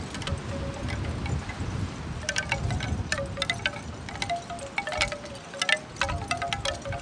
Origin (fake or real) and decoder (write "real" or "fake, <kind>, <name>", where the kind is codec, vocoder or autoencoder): real